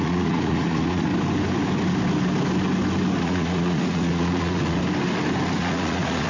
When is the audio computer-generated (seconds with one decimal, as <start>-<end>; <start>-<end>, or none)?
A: 0.0-1.1; 3.2-4.8; 5.6-6.3